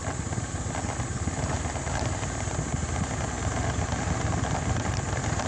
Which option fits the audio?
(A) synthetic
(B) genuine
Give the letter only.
B